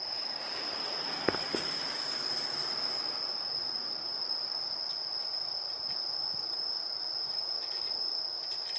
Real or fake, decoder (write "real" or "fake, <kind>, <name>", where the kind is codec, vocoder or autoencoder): real